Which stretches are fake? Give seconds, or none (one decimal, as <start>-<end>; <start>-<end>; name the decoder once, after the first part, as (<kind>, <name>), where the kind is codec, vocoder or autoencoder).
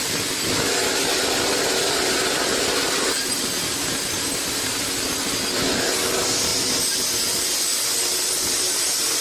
none